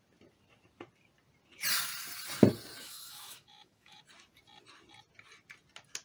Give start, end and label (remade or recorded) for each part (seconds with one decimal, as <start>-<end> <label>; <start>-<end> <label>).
0.0-2.8 recorded; 2.8-4.0 remade; 4.0-6.0 recorded